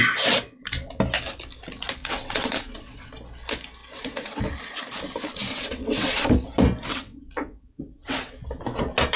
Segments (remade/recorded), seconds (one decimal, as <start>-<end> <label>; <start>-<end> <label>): 0.0-2.0 recorded; 2.0-3.1 remade; 3.1-3.8 recorded; 3.8-4.4 remade; 4.4-5.5 recorded; 5.5-6.3 remade; 6.3-6.9 recorded; 6.9-8.4 remade; 8.4-9.2 recorded